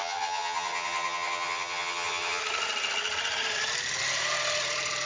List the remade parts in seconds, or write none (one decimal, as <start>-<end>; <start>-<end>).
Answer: 0.0-2.4